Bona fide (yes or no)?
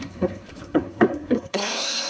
no